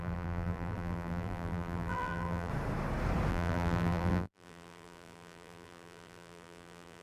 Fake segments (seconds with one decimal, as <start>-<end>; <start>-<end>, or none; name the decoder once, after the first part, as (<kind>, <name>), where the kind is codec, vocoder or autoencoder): 0.0-2.5 (vocoder, BigVGAN v2); 3.3-7.0